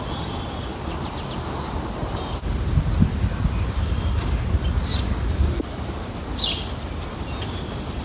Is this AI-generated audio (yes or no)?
no